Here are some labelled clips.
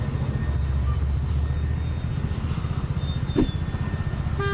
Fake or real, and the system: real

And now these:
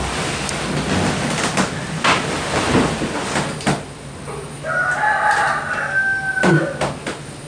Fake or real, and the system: real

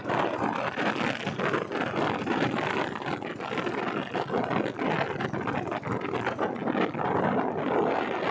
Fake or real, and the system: real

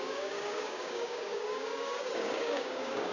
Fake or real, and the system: fake, codec, DAC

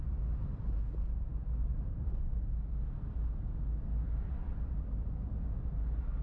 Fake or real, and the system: real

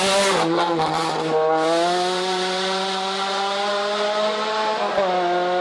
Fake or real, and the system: real